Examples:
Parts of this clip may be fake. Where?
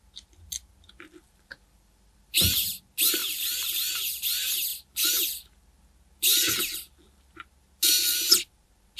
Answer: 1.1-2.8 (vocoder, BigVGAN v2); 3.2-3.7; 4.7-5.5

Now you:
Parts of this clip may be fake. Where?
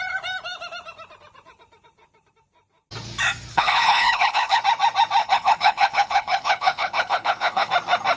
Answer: 3.5-4.6 (codec, HILCodec); 5.2-7.7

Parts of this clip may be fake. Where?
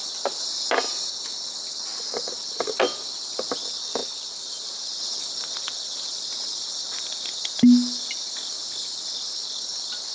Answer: none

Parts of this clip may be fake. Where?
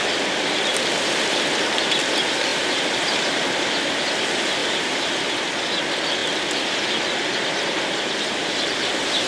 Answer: 2.5-4.1 (vocoder, BigVGAN v2); 4.6-5.2